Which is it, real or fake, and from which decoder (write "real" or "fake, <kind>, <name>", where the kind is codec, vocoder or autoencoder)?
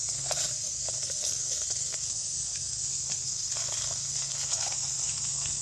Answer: fake, codec, SNAC